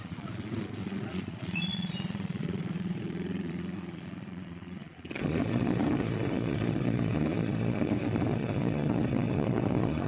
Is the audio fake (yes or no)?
yes